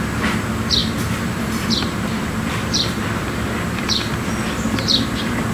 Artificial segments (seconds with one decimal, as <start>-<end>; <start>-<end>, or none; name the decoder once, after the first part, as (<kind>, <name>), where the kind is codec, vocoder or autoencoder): 0.8-4.1 (vocoder, BigVGAN v2)